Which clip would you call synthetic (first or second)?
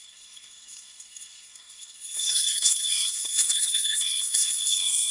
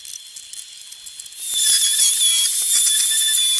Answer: first